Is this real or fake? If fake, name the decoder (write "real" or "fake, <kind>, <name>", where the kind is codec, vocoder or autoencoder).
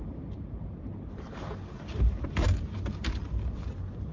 fake, vocoder, BigVGAN v2